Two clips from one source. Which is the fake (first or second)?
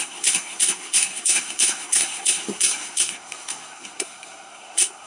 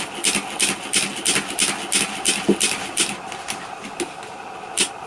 first